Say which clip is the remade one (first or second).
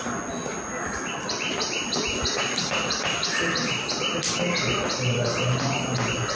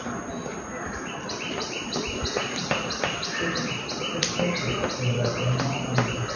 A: second